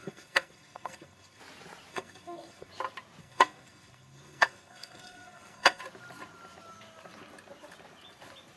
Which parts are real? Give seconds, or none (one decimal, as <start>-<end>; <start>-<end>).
1.4-1.9; 2.7-3.2; 5.8-8.6